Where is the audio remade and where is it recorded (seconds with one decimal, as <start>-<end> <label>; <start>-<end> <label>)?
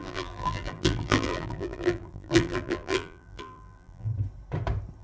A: 0.0-4.1 remade; 4.1-5.0 recorded